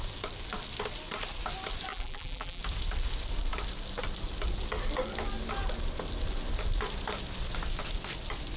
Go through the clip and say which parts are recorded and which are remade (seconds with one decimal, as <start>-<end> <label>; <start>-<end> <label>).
0.0-1.9 recorded; 1.9-2.6 remade; 2.6-8.6 recorded